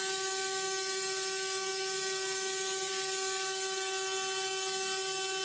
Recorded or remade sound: recorded